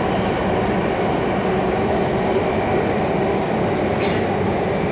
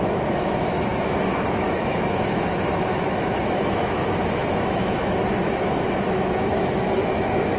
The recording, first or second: first